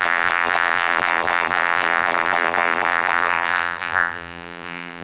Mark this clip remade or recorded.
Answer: remade